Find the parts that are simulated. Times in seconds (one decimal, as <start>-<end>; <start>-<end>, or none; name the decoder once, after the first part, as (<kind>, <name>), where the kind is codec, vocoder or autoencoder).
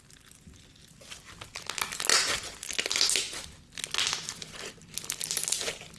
none